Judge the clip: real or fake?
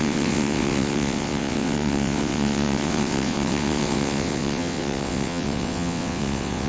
fake